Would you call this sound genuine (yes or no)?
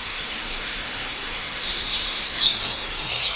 no